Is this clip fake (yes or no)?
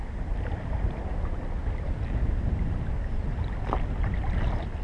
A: no